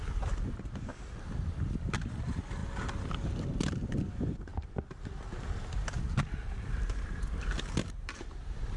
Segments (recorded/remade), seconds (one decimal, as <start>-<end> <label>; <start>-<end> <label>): 0.0-2.6 remade; 2.6-3.7 recorded; 3.7-4.5 remade; 4.5-5.7 recorded; 5.7-8.8 remade